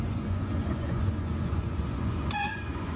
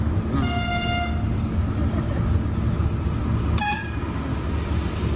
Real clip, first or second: second